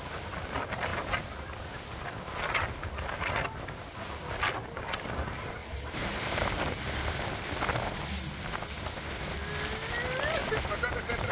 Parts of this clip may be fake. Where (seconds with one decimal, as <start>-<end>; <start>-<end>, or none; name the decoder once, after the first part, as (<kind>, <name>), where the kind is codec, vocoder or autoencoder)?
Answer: 5.6-7.0 (vocoder, BigVGAN v2); 10.4-11.3